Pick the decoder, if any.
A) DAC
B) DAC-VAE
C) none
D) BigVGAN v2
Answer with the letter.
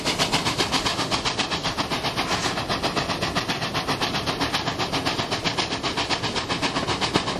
C